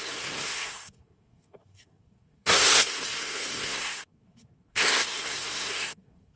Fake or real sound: fake